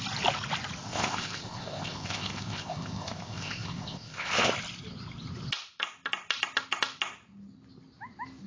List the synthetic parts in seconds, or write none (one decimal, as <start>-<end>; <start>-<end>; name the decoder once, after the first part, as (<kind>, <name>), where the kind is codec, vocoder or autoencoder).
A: 0.8-4.5 (codec, ZipCodec)